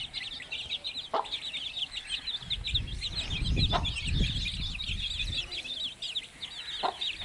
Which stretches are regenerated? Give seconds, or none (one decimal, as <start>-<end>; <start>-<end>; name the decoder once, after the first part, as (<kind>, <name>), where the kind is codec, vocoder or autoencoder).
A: none

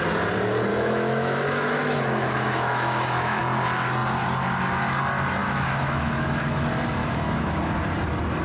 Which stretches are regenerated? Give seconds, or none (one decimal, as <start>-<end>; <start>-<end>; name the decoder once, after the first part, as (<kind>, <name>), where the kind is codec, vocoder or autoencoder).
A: 0.7-3.4 (autoencoder, DAC-VAE); 5.4-6.6; 7.0-7.7